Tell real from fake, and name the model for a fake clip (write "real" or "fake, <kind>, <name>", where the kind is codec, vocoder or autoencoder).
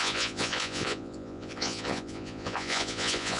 fake, vocoder, Vocos